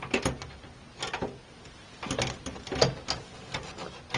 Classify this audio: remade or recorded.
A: recorded